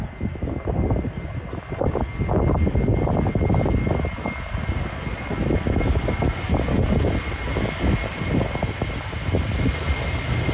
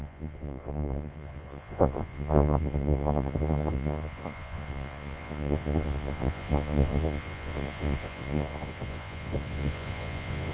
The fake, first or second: second